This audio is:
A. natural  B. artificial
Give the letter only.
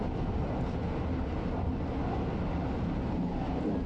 A